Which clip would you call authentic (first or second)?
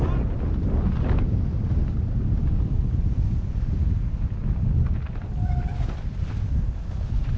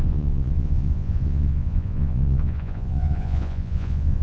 first